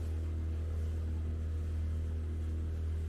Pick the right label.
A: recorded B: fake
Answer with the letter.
A